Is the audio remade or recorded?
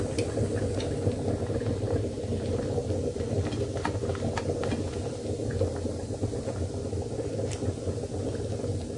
recorded